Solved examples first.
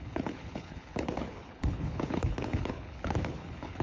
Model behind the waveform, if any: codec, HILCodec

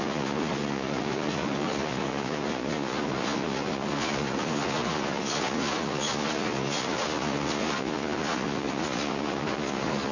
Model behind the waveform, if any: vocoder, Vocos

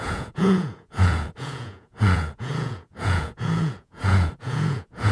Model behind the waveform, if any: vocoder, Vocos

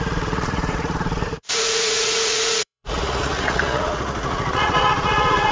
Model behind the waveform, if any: vocoder, Vocos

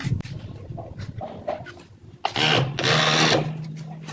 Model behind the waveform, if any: none